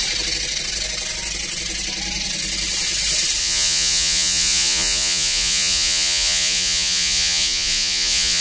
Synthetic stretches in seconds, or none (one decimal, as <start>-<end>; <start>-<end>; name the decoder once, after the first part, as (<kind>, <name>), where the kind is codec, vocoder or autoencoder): 3.4-8.4 (vocoder, Vocos)